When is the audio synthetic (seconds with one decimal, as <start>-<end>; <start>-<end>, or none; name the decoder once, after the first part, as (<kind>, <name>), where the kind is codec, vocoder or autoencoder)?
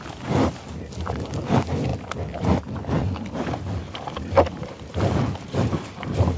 none